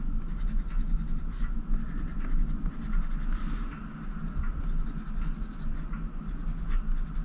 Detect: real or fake real